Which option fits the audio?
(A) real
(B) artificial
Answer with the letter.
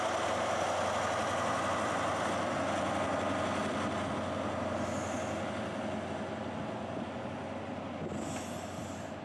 A